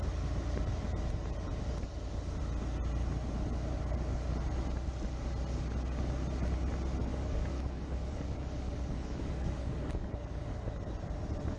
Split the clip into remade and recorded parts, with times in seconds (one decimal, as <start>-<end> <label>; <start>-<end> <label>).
0.0-7.0 recorded; 7.0-10.6 remade; 10.6-11.6 recorded